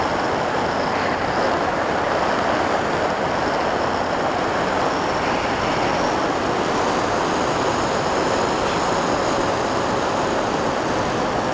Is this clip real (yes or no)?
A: yes